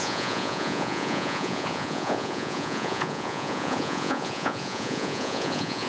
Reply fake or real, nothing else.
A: fake